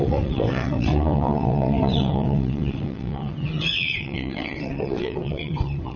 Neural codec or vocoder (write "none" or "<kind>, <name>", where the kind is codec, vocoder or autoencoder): vocoder, WaveNeXt